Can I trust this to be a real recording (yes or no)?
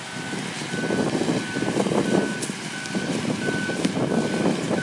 yes